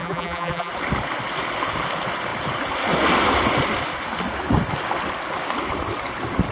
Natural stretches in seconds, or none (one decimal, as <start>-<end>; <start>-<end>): 0.7-6.5